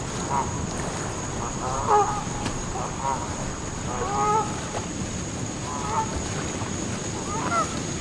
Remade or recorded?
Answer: remade